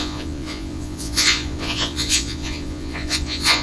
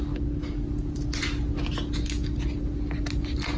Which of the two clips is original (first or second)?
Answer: second